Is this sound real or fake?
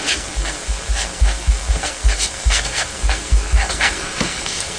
fake